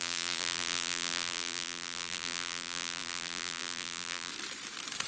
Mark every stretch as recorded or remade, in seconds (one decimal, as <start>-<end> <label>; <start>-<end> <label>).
0.0-4.3 remade; 4.3-5.1 recorded

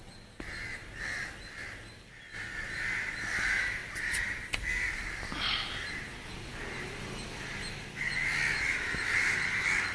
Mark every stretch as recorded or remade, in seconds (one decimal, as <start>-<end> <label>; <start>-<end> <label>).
0.0-9.9 recorded

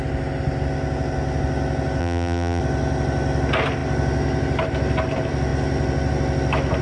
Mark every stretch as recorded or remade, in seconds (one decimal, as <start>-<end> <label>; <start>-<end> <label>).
0.0-2.0 recorded; 2.0-2.6 remade; 2.6-6.8 recorded